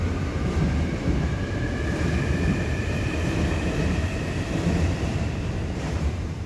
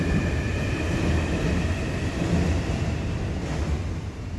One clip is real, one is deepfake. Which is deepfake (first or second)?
first